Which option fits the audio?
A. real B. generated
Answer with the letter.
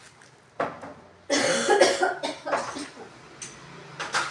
A